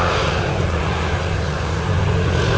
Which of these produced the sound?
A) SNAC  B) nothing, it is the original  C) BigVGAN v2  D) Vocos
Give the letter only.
D